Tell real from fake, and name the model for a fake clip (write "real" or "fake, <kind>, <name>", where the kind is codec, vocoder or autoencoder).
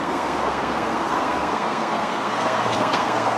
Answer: fake, codec, SNAC